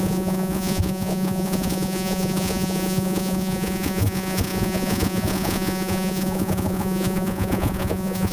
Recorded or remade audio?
remade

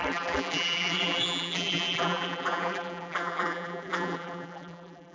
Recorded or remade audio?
remade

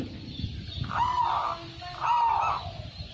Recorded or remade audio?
recorded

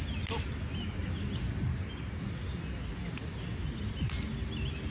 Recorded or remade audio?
recorded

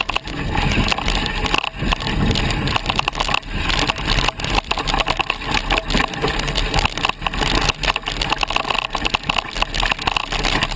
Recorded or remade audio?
recorded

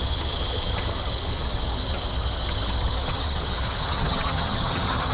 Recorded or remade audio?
remade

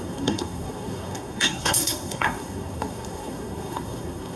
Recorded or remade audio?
remade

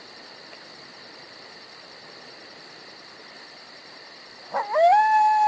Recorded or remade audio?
recorded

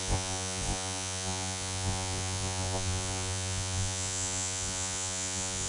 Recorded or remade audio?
remade